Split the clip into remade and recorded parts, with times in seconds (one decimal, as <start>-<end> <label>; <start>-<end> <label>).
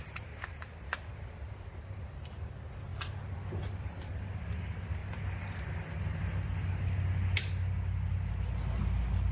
0.0-9.3 recorded